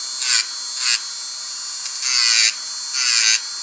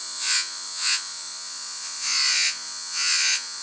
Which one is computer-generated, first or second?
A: second